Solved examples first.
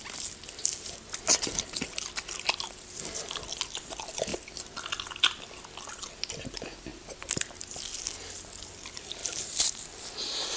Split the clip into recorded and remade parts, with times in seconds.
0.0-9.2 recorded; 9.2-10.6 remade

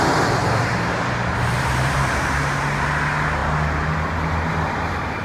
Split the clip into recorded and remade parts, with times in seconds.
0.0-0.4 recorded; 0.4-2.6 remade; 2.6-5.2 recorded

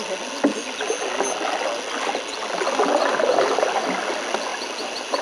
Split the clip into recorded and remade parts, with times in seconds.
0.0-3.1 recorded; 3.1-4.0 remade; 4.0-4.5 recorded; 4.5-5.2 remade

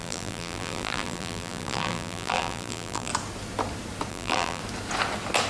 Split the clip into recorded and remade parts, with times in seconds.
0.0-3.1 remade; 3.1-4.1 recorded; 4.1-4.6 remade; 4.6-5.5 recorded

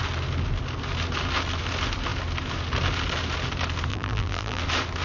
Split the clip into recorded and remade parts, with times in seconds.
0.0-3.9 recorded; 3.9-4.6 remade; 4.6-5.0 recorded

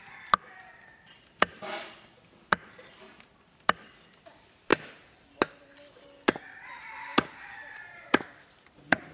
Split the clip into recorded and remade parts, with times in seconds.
0.0-4.7 remade; 4.7-6.4 recorded; 6.4-9.1 remade

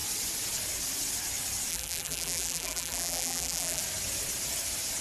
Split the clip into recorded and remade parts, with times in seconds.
0.0-1.7 recorded; 1.7-3.8 remade; 3.8-5.0 recorded